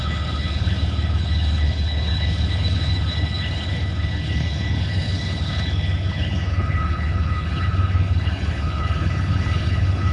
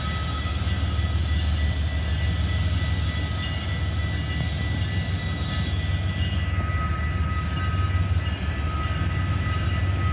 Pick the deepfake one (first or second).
first